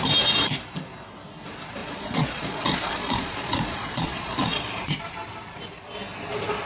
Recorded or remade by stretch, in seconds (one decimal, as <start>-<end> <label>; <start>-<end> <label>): 0.0-1.8 recorded; 1.8-4.7 remade; 4.7-6.7 recorded